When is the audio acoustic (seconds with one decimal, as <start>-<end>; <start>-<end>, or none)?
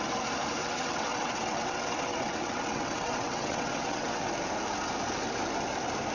0.0-0.6; 4.3-6.1